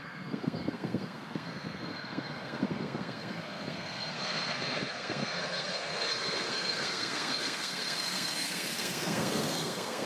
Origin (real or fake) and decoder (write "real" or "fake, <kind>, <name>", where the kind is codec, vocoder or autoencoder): fake, codec, SNAC